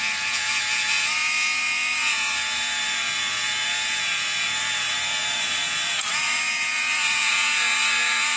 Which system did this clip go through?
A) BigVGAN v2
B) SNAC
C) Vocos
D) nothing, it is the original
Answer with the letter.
C